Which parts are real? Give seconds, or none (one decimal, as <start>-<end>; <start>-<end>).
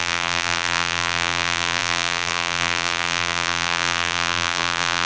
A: none